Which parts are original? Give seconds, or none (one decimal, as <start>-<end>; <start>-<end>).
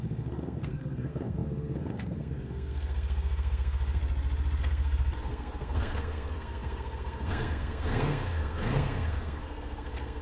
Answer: 4.0-4.6